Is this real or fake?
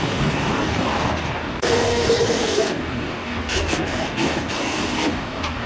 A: fake